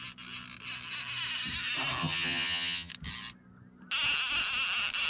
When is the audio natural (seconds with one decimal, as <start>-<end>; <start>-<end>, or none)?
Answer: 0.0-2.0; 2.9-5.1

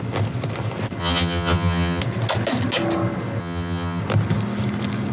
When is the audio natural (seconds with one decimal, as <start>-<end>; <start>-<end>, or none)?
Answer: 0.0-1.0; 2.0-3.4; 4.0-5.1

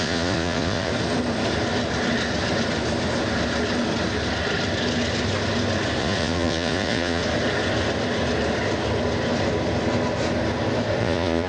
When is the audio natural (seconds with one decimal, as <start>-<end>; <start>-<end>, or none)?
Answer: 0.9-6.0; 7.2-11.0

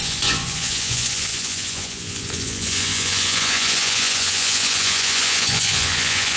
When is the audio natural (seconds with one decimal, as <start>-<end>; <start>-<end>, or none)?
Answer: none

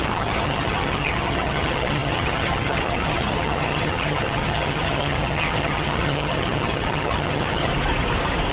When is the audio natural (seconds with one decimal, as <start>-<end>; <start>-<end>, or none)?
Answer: 7.7-8.5

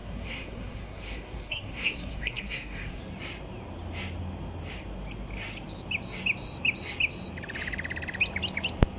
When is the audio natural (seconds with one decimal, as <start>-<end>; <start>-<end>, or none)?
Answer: 3.0-9.0

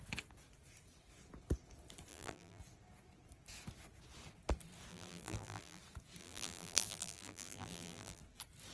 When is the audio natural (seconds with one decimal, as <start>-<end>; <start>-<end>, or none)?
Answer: 0.0-2.1; 2.6-4.9; 5.8-6.2; 8.2-8.7

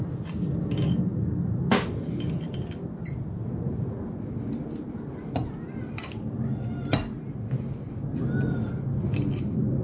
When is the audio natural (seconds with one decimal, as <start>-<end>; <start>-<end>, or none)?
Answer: 0.0-9.8